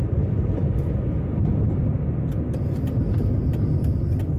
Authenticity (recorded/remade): recorded